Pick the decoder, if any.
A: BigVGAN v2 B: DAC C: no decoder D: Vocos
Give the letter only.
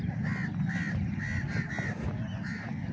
C